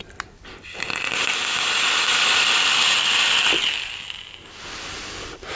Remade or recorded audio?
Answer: recorded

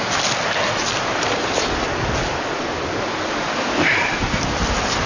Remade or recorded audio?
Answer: recorded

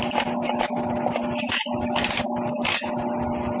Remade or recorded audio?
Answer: recorded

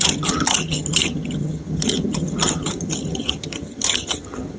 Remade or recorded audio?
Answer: remade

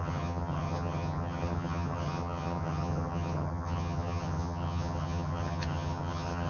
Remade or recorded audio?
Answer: remade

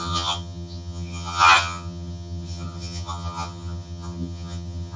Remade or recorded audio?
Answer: remade